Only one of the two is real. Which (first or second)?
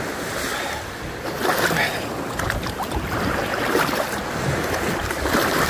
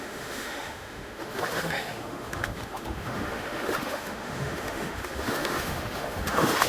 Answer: first